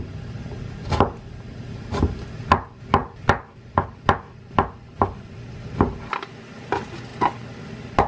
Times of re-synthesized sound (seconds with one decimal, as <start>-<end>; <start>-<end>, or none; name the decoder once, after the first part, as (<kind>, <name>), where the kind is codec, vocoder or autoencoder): none